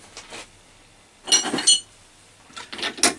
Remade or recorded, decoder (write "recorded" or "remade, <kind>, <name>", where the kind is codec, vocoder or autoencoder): recorded